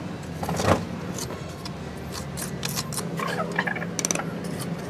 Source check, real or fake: real